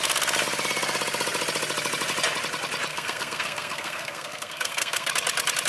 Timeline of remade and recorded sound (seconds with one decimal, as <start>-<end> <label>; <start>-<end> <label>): 0.0-2.9 recorded; 2.9-5.1 remade; 5.1-5.7 recorded